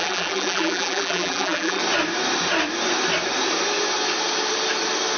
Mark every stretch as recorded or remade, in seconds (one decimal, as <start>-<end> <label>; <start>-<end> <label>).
0.0-1.8 remade; 1.8-5.2 recorded